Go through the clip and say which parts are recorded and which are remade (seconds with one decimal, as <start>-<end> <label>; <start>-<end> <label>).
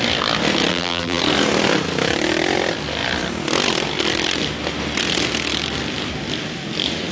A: 0.0-0.7 recorded; 0.7-1.2 remade; 1.2-7.1 recorded